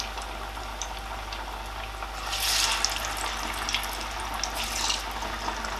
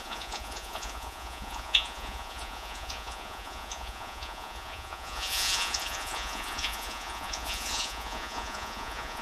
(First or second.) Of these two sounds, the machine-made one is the second